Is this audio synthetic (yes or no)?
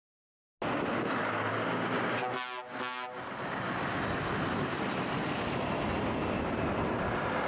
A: no